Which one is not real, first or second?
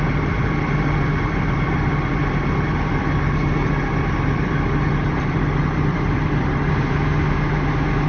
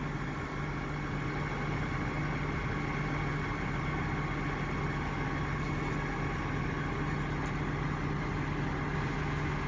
first